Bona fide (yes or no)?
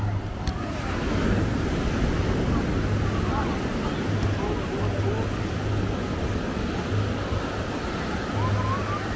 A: yes